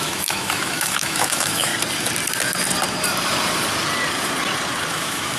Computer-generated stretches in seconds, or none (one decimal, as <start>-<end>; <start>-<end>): 0.0-1.7; 4.9-5.4